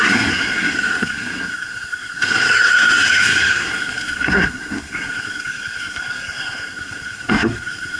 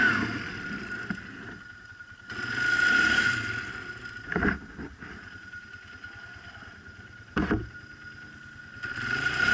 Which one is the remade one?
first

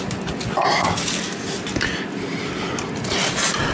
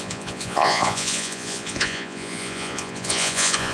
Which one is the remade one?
second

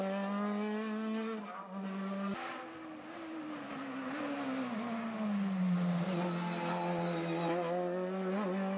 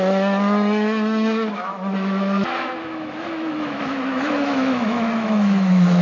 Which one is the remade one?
second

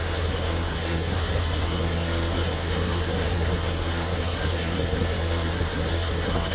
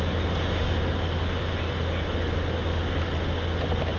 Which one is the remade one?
first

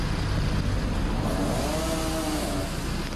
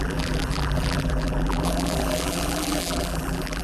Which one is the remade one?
second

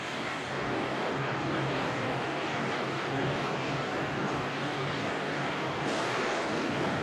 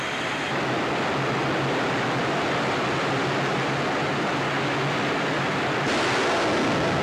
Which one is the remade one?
first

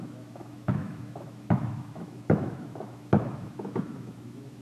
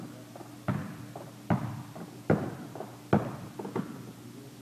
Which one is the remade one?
first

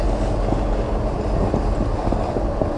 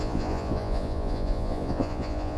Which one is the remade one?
second